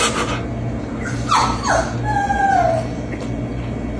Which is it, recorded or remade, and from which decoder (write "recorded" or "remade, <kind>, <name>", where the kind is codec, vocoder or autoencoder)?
recorded